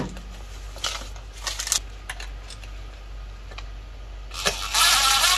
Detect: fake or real real